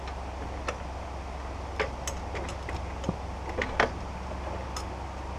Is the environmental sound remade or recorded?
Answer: recorded